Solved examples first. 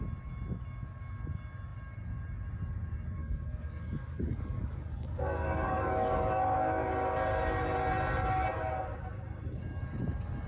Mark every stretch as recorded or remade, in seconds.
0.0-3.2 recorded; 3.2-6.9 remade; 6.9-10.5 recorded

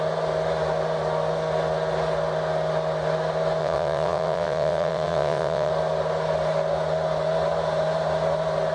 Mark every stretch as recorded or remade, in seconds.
0.0-3.6 recorded; 3.6-5.7 remade; 5.7-8.7 recorded